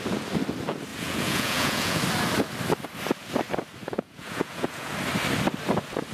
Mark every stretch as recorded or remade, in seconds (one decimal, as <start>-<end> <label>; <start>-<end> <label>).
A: 0.0-0.9 recorded; 0.9-2.0 remade; 2.0-3.8 recorded; 3.8-4.9 remade; 4.9-6.1 recorded